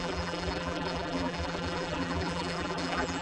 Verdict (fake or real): fake